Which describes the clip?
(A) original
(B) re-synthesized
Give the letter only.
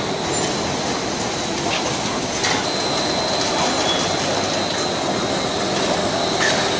A